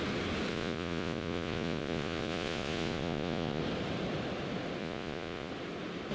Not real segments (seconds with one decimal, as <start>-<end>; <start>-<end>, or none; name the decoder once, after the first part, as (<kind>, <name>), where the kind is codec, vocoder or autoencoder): 0.5-3.6 (vocoder, Vocos); 4.8-5.5